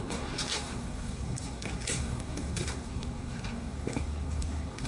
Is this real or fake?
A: fake